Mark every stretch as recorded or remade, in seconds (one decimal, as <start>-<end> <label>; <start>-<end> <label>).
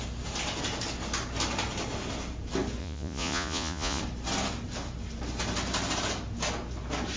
0.0-2.8 recorded; 2.8-4.0 remade; 4.0-7.2 recorded